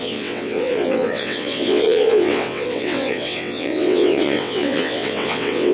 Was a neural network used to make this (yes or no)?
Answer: yes